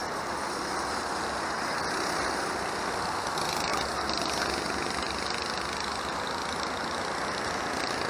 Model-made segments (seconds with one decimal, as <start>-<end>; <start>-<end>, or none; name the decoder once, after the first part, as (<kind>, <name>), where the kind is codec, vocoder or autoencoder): none